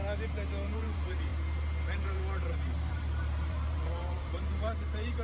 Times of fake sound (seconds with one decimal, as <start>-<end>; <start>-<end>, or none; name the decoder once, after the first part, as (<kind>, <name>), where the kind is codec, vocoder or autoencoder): 0.8-1.3 (vocoder, BigVGAN v2); 2.9-5.2